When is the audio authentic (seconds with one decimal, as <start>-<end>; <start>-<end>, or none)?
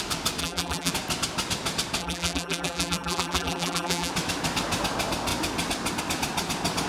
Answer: 0.0-0.4; 0.9-2.0; 4.1-6.9